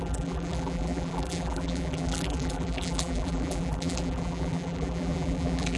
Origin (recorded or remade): remade